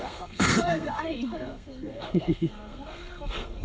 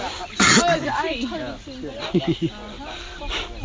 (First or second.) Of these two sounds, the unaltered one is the second